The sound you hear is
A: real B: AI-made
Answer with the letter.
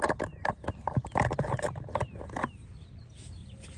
A